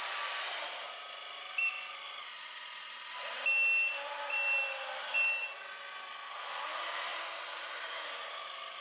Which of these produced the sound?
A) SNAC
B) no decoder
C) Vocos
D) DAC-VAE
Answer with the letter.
B